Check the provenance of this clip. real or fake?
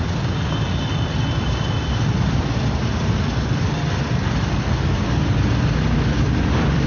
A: real